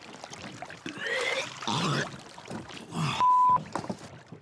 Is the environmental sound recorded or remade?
recorded